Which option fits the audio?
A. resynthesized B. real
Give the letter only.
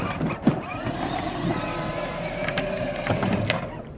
B